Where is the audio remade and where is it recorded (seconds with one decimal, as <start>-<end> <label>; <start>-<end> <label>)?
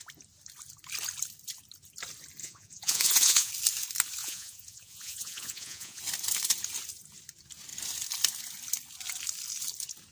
0.0-2.4 recorded; 2.4-3.5 remade; 3.5-4.2 recorded; 4.2-6.0 remade; 6.0-10.1 recorded